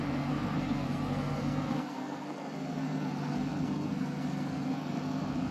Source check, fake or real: fake